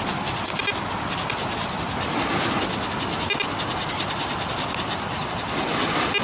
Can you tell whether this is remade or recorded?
recorded